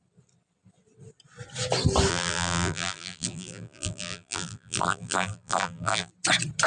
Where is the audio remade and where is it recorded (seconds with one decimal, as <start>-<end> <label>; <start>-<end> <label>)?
0.0-2.1 recorded; 2.1-6.1 remade; 6.1-6.7 recorded